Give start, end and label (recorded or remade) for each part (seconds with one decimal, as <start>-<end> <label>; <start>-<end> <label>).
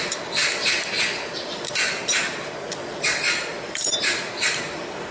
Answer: 0.0-5.1 recorded